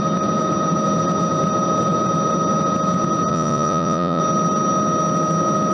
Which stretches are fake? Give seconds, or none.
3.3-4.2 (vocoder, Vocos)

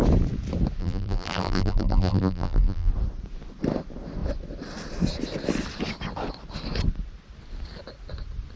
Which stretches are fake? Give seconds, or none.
0.8-2.9 (vocoder, BigVGAN v2)

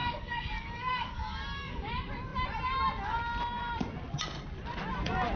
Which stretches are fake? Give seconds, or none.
0.0-1.9 (codec, DAC)